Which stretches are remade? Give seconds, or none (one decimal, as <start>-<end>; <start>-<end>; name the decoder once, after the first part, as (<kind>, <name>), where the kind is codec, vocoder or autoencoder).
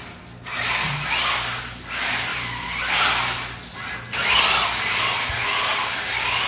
none